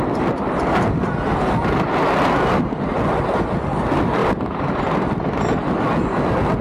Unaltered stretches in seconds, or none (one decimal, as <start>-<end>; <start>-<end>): 0.0-6.6

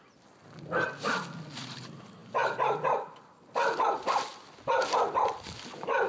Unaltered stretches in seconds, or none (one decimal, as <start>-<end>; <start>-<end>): 0.0-6.1

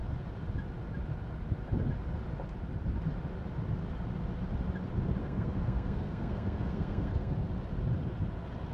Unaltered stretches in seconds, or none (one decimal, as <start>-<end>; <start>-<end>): 0.0-5.2; 7.3-8.7

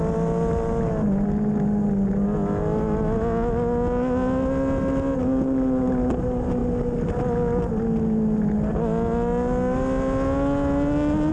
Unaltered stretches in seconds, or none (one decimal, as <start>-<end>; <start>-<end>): 0.0-11.3